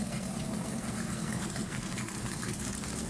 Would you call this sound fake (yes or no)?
yes